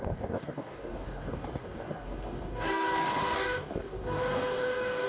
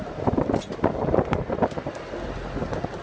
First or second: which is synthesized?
first